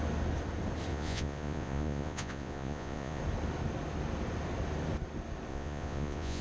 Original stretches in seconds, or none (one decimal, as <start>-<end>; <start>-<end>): 0.0-0.9; 3.2-5.5